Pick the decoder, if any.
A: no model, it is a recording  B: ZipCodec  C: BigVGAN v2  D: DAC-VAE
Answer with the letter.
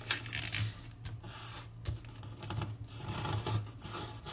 A